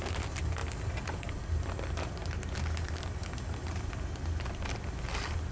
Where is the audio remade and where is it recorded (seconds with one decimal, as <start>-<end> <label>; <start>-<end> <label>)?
0.0-5.5 recorded